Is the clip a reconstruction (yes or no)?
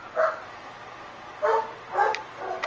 no